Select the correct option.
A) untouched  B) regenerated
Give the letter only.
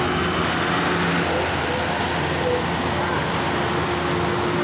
A